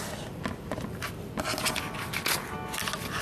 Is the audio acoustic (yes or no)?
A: yes